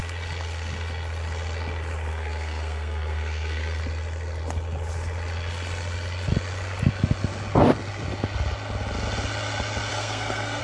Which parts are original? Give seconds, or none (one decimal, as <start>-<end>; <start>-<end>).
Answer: 0.0-2.1; 3.8-9.9